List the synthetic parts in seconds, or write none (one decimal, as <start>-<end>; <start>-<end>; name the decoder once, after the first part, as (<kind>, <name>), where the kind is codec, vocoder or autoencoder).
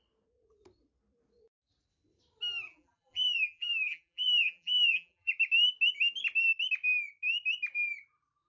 2.7-5.3 (vocoder, BigVGAN v2)